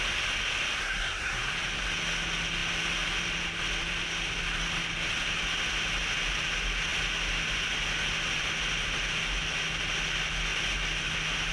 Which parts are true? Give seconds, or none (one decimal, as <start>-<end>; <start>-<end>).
0.0-0.8; 1.4-11.5